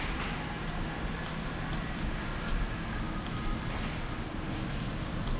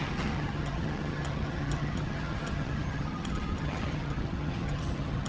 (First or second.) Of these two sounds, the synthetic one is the second